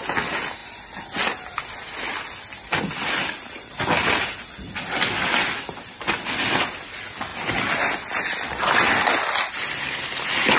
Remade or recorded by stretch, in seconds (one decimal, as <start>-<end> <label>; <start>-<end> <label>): 0.0-10.6 recorded